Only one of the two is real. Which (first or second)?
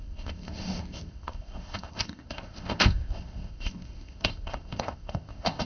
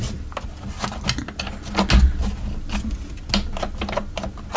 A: second